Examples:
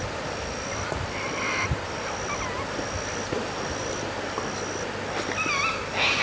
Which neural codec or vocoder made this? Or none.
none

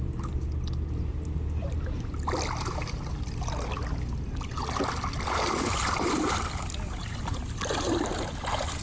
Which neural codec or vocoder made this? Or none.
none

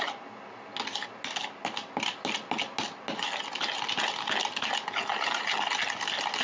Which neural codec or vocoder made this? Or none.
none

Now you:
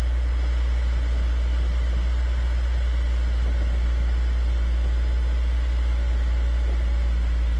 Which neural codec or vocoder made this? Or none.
none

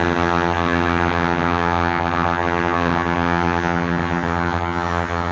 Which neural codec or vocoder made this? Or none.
vocoder, HiFi-GAN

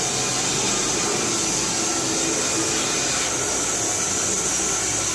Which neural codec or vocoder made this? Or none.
none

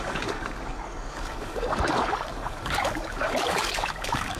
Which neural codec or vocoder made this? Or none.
codec, DAC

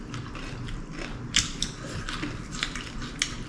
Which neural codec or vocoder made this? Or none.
none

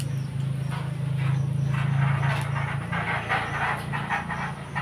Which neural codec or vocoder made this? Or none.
none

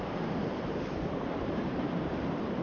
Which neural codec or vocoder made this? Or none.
vocoder, BigVGAN v2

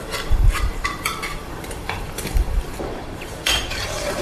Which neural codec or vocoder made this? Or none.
vocoder, BigVGAN v2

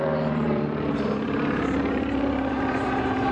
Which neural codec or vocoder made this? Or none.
vocoder, BigVGAN v2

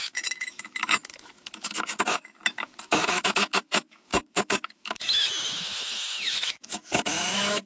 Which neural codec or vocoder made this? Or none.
autoencoder, DAC-VAE